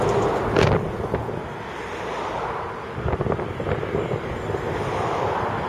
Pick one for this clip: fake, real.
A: real